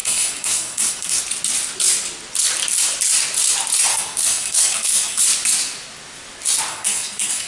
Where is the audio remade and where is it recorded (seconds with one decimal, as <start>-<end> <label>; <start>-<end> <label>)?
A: 0.0-1.2 remade; 1.2-3.9 recorded; 3.9-5.2 remade; 5.2-6.7 recorded; 6.7-7.5 remade